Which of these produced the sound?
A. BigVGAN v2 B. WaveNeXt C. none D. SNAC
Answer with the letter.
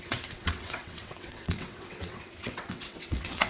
B